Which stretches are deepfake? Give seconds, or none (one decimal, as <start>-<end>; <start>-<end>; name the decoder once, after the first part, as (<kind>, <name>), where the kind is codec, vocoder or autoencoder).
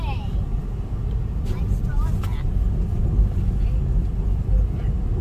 none